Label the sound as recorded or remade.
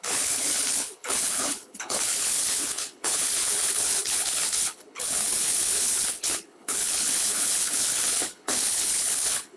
remade